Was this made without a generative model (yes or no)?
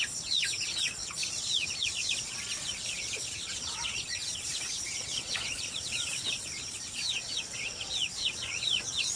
no